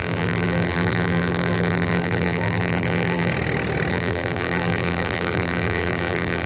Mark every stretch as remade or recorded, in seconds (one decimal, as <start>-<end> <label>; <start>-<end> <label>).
0.0-3.3 remade; 3.3-3.9 recorded; 3.9-6.5 remade